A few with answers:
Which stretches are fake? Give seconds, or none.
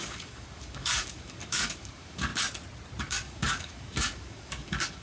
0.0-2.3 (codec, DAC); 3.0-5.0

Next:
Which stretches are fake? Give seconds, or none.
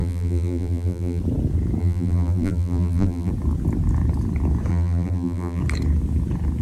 0.0-1.2 (vocoder, BigVGAN v2); 1.8-3.3; 4.7-5.6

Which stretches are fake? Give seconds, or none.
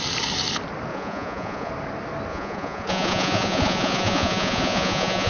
0.9-1.7 (vocoder, Vocos); 2.3-5.3